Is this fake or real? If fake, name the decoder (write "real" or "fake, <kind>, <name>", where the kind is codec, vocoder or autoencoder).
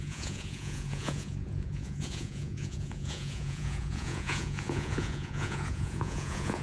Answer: fake, vocoder, Vocos